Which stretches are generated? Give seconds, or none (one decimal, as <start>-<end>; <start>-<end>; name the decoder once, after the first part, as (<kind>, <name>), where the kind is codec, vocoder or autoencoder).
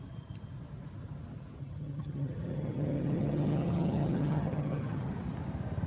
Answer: 1.6-5.1 (vocoder, HiFi-GAN)